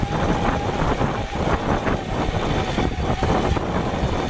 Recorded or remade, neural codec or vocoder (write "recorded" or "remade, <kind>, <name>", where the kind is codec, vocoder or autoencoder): recorded